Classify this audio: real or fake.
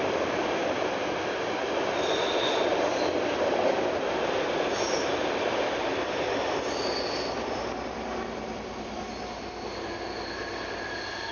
real